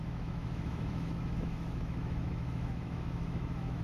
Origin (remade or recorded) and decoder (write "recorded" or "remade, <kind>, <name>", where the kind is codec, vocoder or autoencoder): remade, autoencoder, DAC-VAE